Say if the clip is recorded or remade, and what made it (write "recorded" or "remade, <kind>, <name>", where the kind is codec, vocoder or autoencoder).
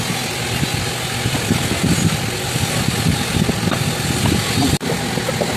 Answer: recorded